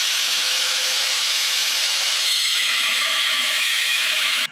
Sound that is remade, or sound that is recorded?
remade